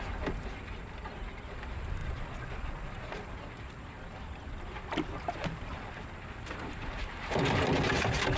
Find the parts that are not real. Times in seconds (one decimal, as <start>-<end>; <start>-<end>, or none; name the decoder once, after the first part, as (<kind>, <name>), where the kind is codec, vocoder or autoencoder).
2.0-3.2 (vocoder, Vocos)